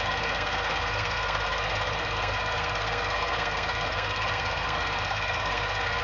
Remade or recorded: remade